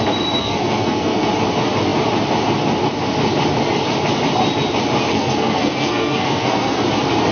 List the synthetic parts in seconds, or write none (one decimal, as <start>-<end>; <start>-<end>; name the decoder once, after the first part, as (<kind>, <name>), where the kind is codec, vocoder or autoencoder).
0.4-1.3 (codec, SNAC); 5.1-6.8